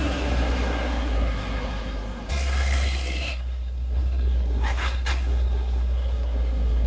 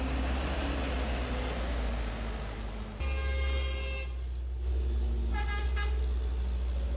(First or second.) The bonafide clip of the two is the second